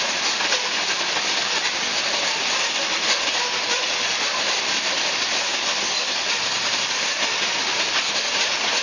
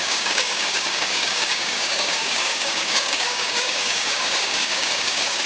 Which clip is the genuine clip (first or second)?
first